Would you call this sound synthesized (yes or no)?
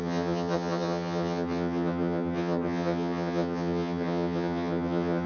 yes